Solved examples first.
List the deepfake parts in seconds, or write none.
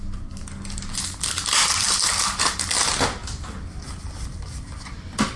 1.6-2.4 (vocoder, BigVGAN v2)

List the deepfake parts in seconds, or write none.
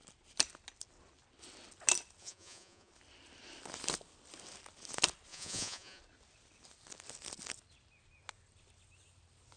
2.2-2.9 (vocoder, Vocos); 5.3-6.0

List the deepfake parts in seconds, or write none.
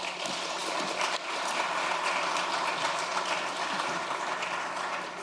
3.1-4.2 (vocoder, BigVGAN v2)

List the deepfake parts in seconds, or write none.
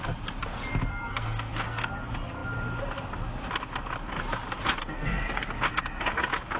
0.9-1.9 (codec, SNAC); 4.8-5.4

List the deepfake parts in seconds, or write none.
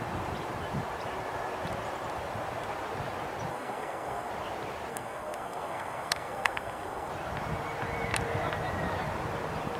3.5-4.3 (codec, SNAC); 4.9-7.1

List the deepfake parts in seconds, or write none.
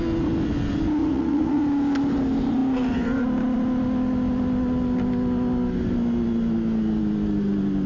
1.0-1.6 (vocoder, Vocos)